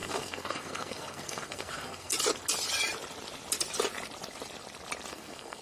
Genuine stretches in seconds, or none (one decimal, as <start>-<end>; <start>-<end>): 2.1-5.1